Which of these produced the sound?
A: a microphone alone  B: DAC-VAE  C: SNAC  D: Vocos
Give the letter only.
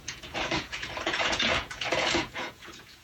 D